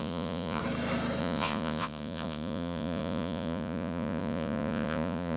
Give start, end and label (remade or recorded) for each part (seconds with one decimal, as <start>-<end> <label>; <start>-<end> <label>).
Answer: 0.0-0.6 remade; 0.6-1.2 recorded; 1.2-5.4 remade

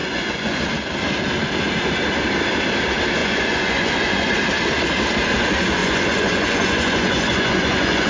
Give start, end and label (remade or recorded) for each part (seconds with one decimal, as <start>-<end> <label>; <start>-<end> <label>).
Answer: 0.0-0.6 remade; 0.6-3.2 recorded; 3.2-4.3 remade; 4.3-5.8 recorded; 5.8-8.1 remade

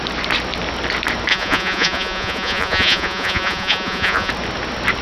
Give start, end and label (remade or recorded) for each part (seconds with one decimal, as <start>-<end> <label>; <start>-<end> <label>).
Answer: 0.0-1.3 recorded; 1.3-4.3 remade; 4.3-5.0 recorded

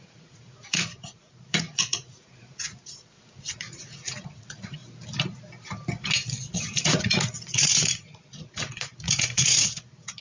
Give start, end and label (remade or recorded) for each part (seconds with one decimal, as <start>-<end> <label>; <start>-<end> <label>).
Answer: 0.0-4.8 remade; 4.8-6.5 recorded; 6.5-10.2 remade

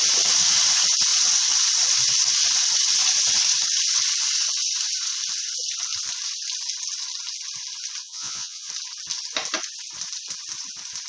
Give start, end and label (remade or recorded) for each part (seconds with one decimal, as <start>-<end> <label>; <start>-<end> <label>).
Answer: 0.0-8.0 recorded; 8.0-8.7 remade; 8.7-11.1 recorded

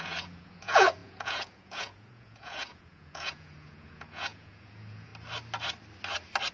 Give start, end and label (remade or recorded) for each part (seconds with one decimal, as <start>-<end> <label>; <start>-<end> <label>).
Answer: 0.0-5.1 remade; 5.1-6.5 recorded

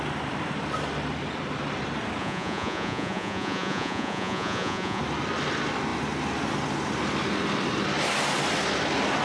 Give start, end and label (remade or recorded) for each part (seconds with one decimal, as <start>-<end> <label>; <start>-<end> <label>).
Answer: 0.0-2.2 recorded; 2.2-5.0 remade; 5.0-9.2 recorded

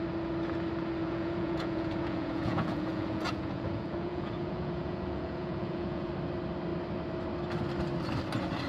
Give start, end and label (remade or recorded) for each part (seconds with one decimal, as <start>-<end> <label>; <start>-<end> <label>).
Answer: 0.0-1.0 recorded; 1.0-6.1 remade; 6.1-8.7 recorded